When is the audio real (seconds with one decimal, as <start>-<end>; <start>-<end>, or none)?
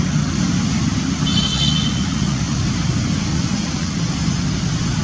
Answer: 0.0-1.5; 2.6-3.3; 4.0-5.0